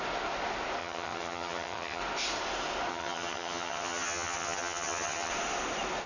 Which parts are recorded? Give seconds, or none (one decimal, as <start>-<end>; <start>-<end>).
0.0-0.8; 2.0-2.9; 5.3-6.1